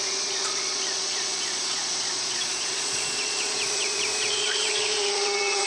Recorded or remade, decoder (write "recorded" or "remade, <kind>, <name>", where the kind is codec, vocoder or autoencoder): remade, vocoder, Vocos